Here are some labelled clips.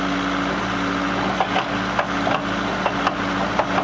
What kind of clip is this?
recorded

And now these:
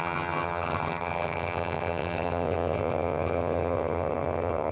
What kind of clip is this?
remade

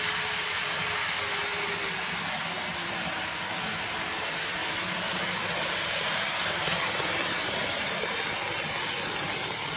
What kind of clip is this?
recorded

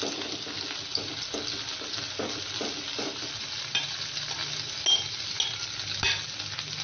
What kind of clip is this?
recorded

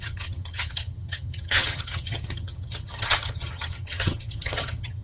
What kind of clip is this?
remade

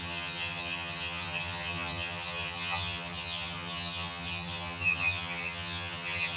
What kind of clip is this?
remade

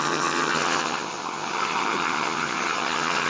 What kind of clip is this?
remade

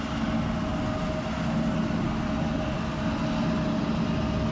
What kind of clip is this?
recorded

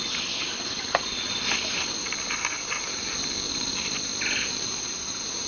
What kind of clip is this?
recorded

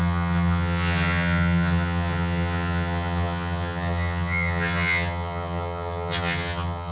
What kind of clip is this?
remade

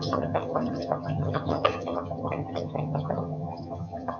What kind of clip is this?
remade